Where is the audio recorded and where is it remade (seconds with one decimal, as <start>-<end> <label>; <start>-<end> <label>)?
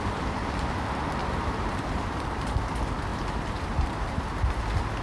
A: 0.0-1.2 recorded; 1.2-2.5 remade; 2.5-3.1 recorded; 3.1-4.6 remade; 4.6-5.0 recorded